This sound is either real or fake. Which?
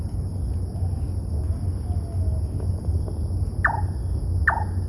real